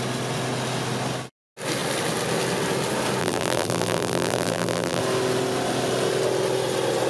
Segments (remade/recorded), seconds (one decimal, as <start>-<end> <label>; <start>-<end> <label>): 0.0-3.2 recorded; 3.2-5.0 remade; 5.0-7.1 recorded